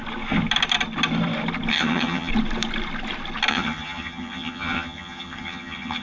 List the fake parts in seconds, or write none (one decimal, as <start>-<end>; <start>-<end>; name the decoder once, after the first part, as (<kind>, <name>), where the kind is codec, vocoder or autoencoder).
1.7-2.3 (vocoder, HiFi-GAN); 3.5-6.0

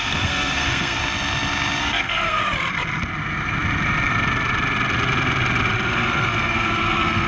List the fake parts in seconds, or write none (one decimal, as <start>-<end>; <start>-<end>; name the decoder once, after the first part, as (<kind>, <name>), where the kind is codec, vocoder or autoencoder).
0.0-1.0 (codec, SNAC); 1.8-2.4; 5.9-7.3

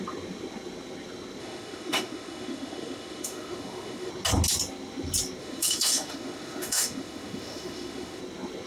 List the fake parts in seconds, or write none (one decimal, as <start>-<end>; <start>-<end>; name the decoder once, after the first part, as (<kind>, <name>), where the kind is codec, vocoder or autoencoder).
1.4-4.1 (autoencoder, DAC-VAE); 5.4-8.2